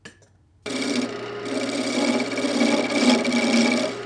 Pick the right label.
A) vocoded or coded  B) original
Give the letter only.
B